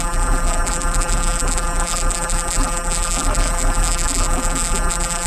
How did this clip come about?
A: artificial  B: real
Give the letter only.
A